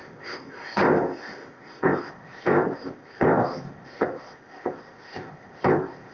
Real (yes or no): no